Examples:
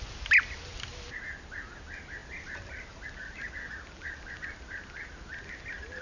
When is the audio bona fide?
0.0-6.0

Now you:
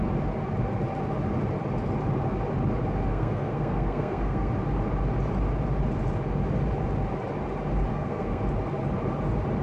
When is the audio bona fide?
0.0-3.1; 4.5-7.9; 8.4-9.6

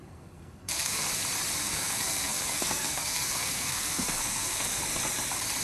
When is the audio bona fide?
1.1-1.6; 4.8-5.6

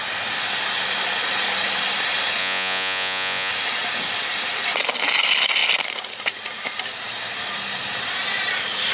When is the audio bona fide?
0.0-2.4; 3.5-8.9